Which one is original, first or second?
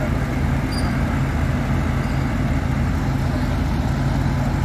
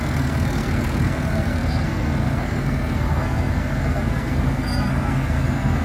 first